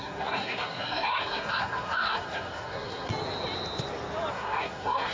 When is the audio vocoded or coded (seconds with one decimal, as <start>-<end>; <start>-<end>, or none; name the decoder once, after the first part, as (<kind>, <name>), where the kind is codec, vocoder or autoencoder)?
0.0-3.1 (codec, SNAC); 4.3-5.1